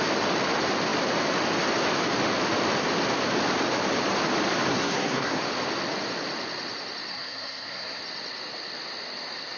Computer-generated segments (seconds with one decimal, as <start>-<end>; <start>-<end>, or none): 4.7-5.4; 7.1-8.0